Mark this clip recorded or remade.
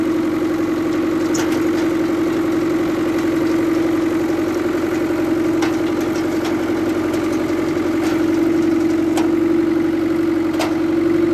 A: recorded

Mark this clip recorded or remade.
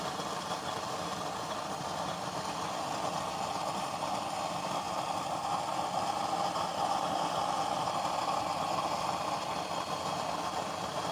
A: recorded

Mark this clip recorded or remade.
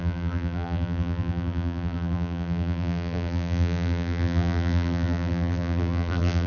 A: remade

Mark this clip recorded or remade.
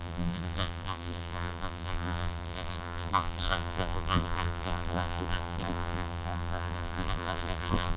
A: remade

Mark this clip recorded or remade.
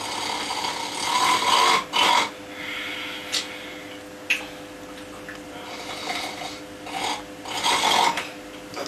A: recorded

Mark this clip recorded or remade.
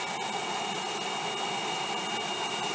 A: recorded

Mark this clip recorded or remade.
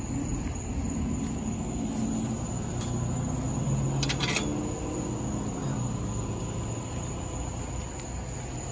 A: recorded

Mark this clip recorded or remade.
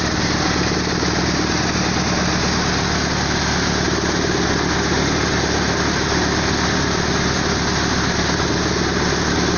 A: recorded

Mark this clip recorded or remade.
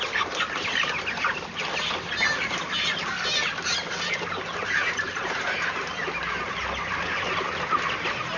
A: recorded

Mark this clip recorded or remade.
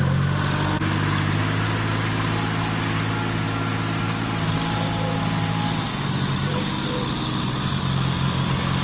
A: recorded